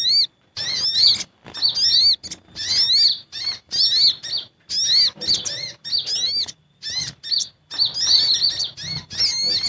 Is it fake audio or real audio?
real